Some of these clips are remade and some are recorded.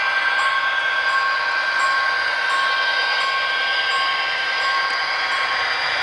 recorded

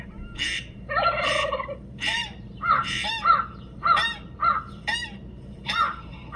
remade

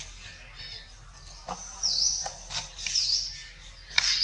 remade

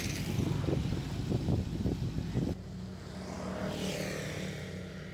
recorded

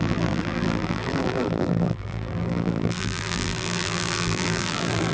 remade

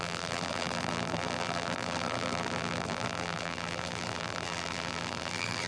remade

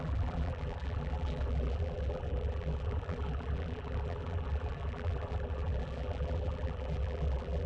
remade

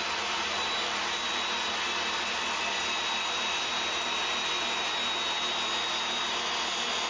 recorded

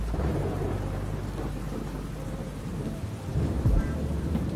remade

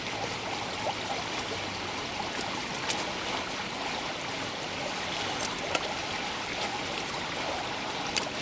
recorded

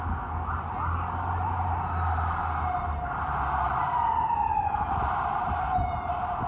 recorded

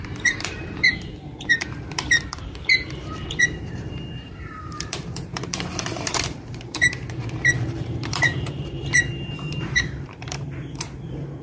remade